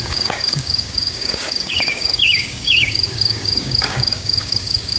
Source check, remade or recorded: remade